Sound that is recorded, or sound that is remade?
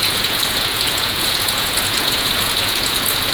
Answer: remade